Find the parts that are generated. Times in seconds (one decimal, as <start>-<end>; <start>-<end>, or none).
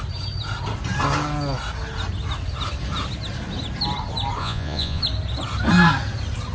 4.4-5.0